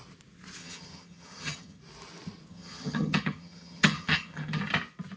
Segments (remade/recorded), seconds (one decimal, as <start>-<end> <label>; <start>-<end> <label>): 0.0-0.6 recorded; 0.6-1.8 remade; 1.8-2.5 recorded; 2.5-4.6 remade; 4.6-5.2 recorded

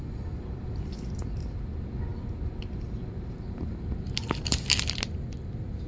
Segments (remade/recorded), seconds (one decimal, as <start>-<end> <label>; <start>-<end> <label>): 0.0-5.9 recorded

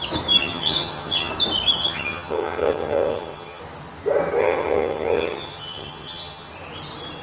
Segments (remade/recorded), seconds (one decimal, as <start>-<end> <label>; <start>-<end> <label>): 0.0-0.4 recorded; 0.4-1.3 remade; 1.3-1.8 recorded; 1.8-3.6 remade; 3.6-4.4 recorded; 4.4-6.5 remade; 6.5-7.2 recorded

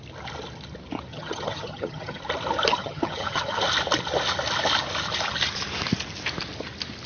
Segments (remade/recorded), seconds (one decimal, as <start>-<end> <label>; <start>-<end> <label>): 0.0-1.1 recorded; 1.1-2.2 remade; 2.2-2.7 recorded; 2.7-3.6 remade; 3.6-7.1 recorded

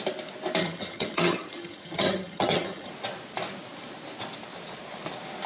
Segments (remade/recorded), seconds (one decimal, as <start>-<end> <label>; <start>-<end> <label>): 0.0-0.6 recorded; 0.6-2.9 remade; 2.9-5.5 recorded